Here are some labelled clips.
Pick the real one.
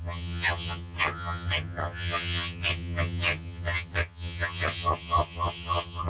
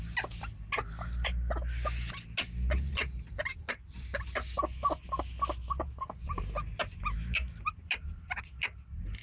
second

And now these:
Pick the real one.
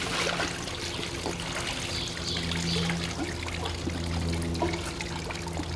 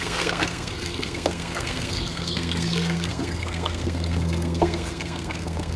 first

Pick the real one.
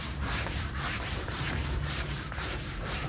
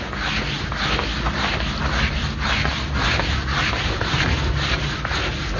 second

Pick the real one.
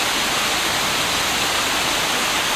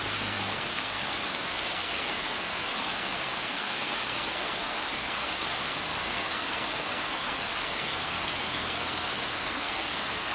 first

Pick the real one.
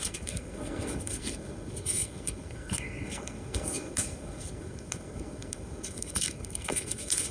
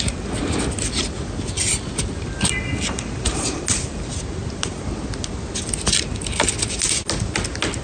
second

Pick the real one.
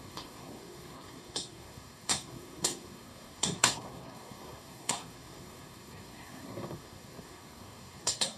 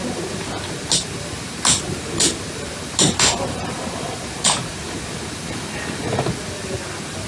second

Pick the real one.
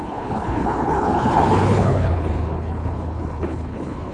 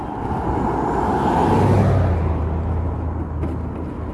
second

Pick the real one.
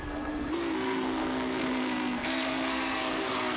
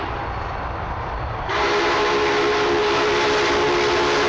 second